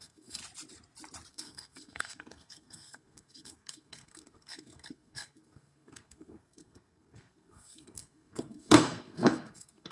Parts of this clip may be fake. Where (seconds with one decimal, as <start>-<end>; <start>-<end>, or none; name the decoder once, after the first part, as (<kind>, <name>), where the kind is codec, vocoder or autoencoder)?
0.0-0.4 (codec, SNAC); 1.3-9.9